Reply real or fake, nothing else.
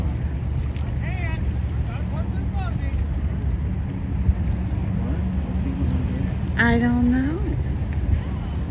real